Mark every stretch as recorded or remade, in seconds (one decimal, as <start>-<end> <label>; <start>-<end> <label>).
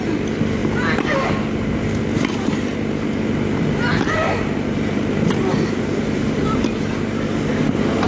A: 0.0-8.1 recorded